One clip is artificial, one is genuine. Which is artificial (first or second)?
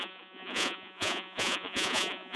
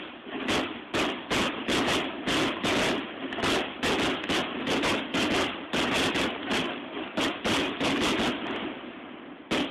first